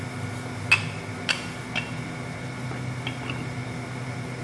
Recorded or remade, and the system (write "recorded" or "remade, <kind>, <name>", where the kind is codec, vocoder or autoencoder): recorded